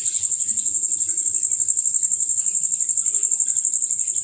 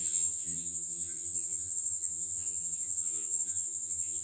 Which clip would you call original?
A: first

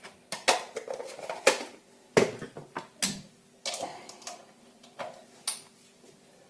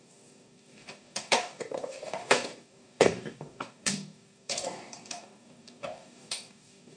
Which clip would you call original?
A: first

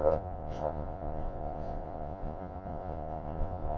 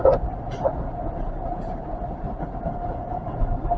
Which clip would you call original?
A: second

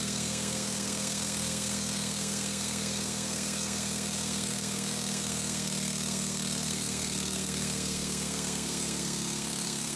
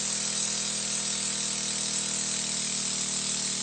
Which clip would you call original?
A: second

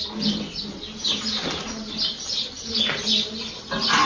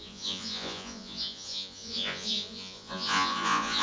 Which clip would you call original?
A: first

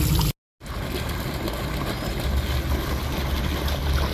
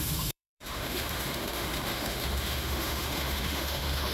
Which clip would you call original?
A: first